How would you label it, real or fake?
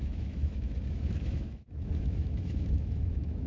fake